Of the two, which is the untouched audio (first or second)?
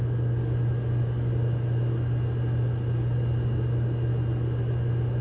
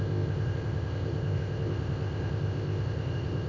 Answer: first